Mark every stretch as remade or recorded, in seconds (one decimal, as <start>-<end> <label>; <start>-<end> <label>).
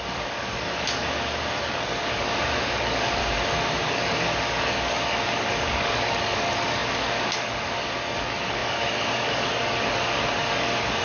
0.0-1.0 remade; 1.0-1.6 recorded; 1.6-3.2 remade; 3.2-3.8 recorded; 3.8-11.0 remade